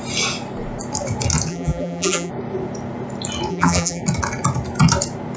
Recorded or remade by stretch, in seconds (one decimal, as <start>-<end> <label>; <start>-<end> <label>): 0.0-1.5 recorded; 1.5-2.3 remade; 2.3-3.5 recorded; 3.5-4.0 remade; 4.0-5.4 recorded